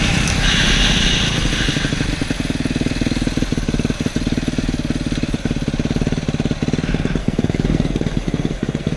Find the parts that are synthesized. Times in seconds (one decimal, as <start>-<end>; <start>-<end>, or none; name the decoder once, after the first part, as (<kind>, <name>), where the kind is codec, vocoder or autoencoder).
7.2-9.0 (codec, SNAC)

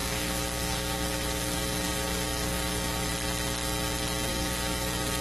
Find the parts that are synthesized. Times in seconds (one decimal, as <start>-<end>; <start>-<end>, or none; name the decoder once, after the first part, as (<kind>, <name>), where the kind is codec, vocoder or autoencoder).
0.0-3.1 (codec, DAC); 4.3-5.2